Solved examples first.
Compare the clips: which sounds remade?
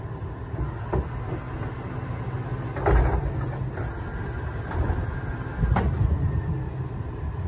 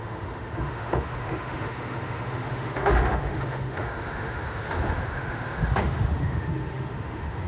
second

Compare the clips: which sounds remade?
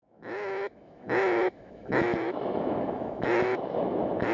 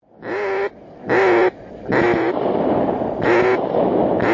first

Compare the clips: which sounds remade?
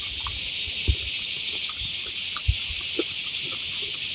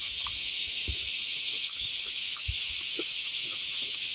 second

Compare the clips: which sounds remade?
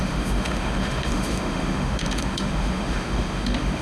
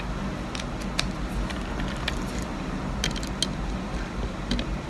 first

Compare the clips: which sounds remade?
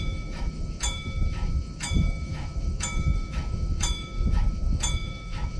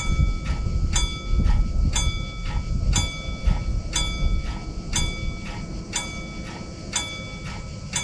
first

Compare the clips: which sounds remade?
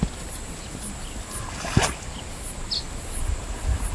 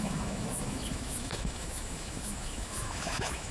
second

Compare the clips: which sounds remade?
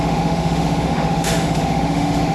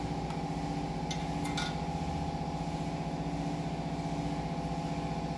first